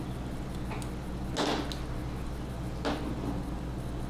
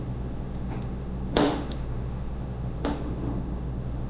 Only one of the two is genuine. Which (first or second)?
first